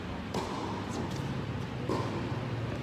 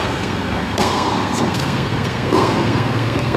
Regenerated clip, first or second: second